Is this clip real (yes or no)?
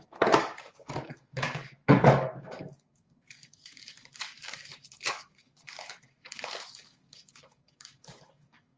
no